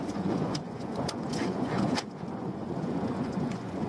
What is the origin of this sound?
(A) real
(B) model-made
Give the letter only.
B